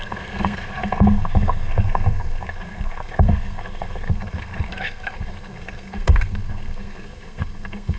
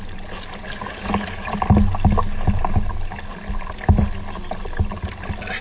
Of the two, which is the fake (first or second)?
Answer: first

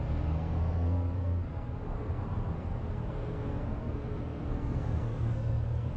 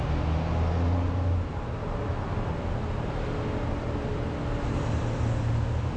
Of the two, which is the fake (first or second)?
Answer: first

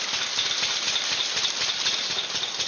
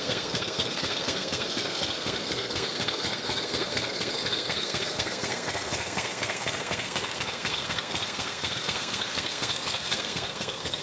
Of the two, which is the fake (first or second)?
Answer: second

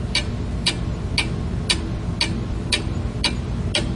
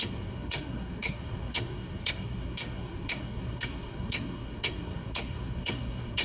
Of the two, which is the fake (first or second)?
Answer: second